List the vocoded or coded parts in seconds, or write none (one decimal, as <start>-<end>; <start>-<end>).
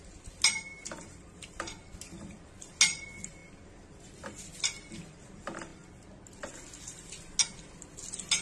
none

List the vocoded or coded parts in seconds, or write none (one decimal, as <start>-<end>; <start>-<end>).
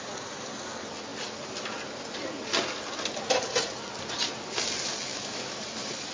5.1-5.6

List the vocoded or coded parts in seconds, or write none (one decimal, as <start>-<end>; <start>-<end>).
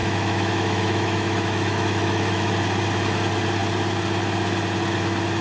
0.0-2.5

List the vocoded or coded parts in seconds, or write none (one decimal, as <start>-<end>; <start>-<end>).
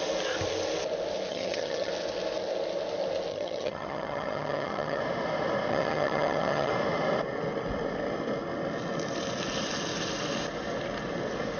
1.3-1.9; 3.3-5.0; 5.7-6.7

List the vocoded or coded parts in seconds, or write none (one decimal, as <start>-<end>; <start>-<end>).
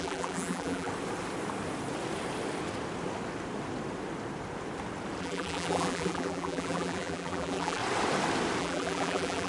0.0-0.9; 5.2-7.8; 8.6-9.5